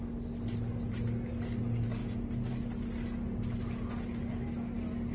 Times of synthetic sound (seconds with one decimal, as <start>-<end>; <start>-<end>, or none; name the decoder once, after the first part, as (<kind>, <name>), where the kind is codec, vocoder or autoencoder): none